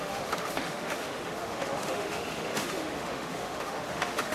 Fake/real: fake